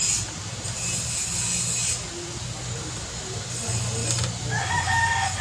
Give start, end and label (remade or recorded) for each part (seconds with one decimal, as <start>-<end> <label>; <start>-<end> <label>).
0.0-5.4 recorded